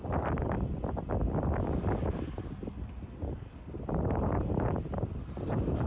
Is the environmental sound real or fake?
real